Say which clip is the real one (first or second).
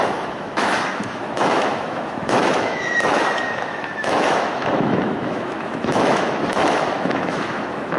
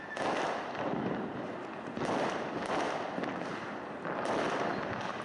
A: second